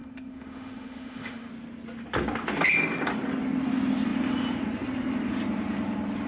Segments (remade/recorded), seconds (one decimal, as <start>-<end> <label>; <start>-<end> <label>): 0.0-1.5 remade; 1.5-6.3 recorded